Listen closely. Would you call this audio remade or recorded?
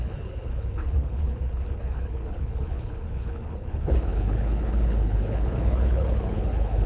remade